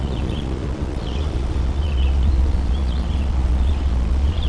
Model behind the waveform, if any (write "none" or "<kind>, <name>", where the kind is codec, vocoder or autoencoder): vocoder, Vocos